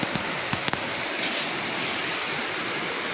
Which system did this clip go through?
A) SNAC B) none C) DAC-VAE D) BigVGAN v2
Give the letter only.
B